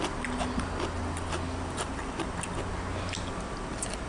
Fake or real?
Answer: real